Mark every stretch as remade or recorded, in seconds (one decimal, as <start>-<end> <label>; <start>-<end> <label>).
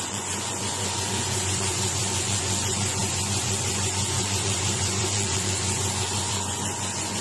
0.0-7.2 remade